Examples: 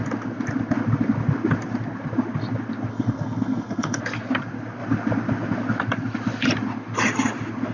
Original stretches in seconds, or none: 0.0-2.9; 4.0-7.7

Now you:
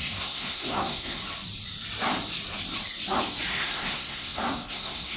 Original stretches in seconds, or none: 1.2-3.5

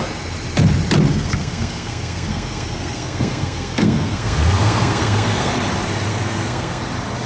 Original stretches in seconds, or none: 0.0-1.1; 5.5-6.1; 6.8-7.3

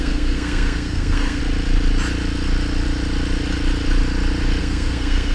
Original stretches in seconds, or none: 1.4-4.6

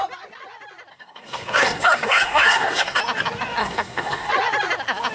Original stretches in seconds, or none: 0.0-0.9; 3.0-3.6; 4.3-5.1

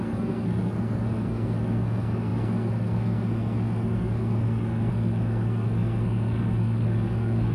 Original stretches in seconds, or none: none